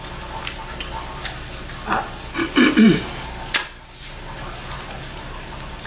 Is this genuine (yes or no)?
yes